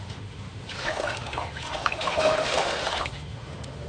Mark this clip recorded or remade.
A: remade